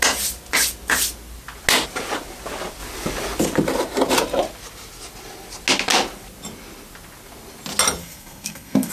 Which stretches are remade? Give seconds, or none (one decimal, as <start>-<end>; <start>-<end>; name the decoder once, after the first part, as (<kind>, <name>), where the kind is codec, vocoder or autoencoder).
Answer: 8.0-8.9 (codec, SNAC)